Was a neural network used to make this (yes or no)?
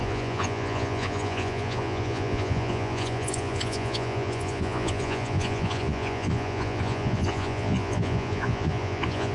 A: yes